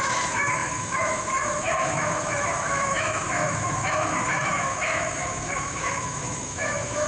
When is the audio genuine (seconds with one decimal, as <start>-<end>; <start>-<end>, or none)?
none